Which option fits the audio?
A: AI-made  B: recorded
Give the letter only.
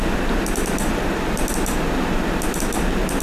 B